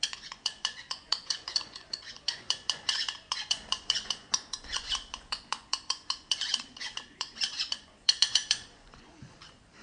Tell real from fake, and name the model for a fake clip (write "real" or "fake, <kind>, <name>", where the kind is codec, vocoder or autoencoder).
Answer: fake, vocoder, Vocos